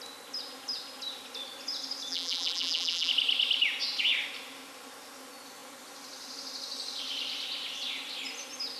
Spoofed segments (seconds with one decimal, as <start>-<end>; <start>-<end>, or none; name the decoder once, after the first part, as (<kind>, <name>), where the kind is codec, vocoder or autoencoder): 2.1-3.1 (vocoder, BigVGAN v2)